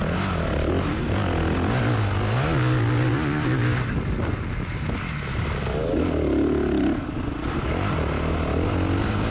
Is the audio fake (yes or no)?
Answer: no